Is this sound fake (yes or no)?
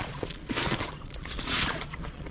yes